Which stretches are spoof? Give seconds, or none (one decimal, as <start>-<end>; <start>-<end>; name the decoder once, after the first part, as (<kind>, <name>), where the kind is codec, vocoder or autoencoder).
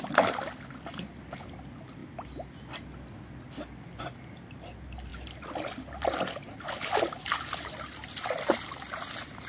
none